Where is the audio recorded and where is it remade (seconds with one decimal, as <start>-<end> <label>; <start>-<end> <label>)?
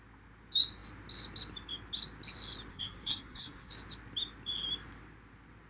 0.0-2.7 recorded; 2.7-3.7 remade; 3.7-5.7 recorded